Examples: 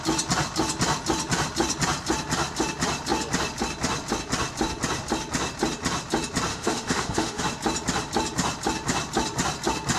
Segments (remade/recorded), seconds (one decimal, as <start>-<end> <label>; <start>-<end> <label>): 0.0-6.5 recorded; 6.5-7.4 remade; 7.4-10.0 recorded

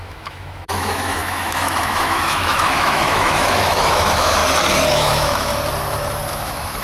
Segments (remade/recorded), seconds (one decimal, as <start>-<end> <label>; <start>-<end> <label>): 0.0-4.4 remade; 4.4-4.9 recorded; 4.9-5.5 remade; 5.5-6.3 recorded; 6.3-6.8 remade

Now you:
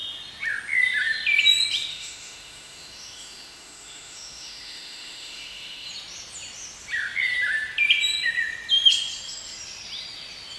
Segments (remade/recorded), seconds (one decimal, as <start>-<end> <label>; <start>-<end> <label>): 0.0-1.9 recorded; 1.9-5.9 remade; 5.9-10.6 recorded

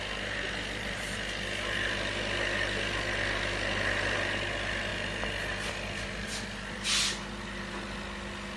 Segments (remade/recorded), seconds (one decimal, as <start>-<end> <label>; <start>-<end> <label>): 0.0-8.6 recorded

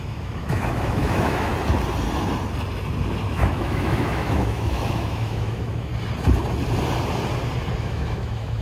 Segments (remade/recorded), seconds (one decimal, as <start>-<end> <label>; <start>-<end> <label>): 0.0-1.5 remade; 1.5-3.3 recorded; 3.3-5.9 remade; 5.9-7.8 recorded; 7.8-8.6 remade

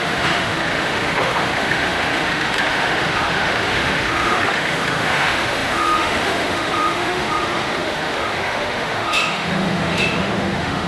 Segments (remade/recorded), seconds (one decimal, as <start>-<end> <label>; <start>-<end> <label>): 0.0-10.9 remade

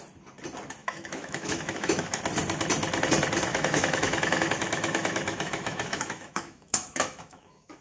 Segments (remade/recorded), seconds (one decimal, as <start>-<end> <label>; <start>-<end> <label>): 0.0-0.8 recorded; 0.8-2.2 remade; 2.2-3.5 recorded; 3.5-7.8 remade

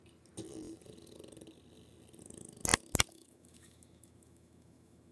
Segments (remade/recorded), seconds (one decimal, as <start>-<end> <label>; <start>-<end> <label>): 0.0-3.1 recorded; 3.1-5.1 remade